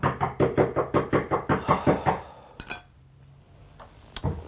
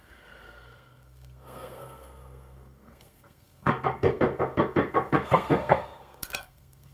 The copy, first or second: second